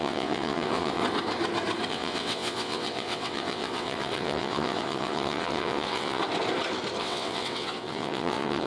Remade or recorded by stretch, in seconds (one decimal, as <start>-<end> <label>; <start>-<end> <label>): 0.0-1.0 remade; 1.0-1.9 recorded; 1.9-6.2 remade; 6.2-7.0 recorded; 7.0-8.7 remade